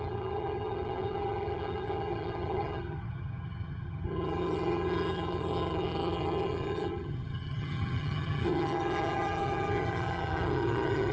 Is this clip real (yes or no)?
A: no